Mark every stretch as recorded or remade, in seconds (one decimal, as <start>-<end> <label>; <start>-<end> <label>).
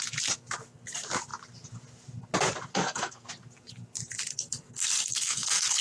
0.0-2.7 recorded; 2.7-3.3 remade; 3.3-4.3 recorded; 4.3-5.8 remade